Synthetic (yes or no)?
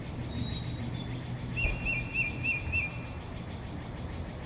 no